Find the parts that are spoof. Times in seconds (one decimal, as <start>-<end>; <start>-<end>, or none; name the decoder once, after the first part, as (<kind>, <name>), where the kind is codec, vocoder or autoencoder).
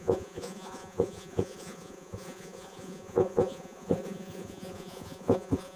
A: 0.0-5.8 (vocoder, Vocos)